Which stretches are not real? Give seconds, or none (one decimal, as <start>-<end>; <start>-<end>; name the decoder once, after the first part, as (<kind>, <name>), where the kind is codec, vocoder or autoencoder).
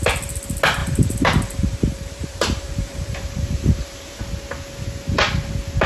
0.8-4.2 (vocoder, BigVGAN v2)